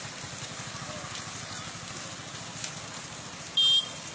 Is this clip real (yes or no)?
yes